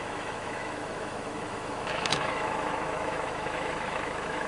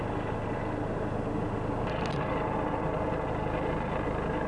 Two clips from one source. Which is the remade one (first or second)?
first